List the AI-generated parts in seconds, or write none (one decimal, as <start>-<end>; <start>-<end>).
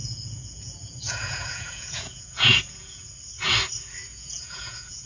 0.0-3.1; 4.1-5.1